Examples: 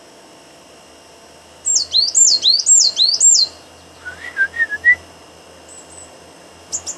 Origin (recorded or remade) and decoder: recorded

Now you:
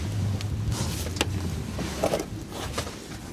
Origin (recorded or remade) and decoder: recorded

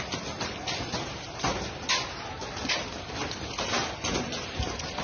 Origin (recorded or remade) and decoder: recorded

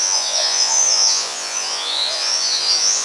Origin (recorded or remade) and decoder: remade, vocoder, Vocos